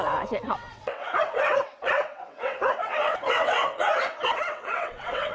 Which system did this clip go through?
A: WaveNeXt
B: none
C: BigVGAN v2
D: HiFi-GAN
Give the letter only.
A